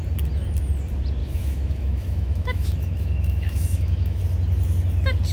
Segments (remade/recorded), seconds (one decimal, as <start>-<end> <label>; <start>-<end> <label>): 0.0-1.2 recorded; 1.2-4.2 remade; 4.2-5.3 recorded